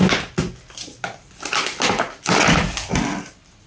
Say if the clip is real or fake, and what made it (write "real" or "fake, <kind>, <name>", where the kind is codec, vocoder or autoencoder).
real